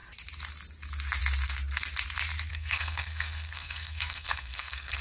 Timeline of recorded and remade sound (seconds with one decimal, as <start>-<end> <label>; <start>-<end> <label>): 0.0-2.5 recorded; 2.5-5.0 remade